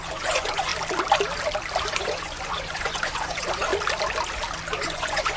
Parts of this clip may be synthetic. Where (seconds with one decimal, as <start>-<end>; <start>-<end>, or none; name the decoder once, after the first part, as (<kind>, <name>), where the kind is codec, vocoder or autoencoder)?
0.0-0.7 (vocoder, Vocos); 1.9-3.7; 4.7-5.4